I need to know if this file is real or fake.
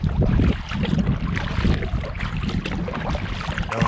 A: real